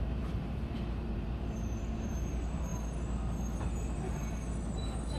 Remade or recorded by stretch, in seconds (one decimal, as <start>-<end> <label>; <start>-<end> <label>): 0.0-2.7 remade; 2.7-5.2 recorded